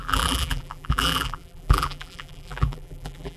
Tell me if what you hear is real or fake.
fake